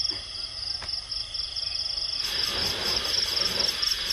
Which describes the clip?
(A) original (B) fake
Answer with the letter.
A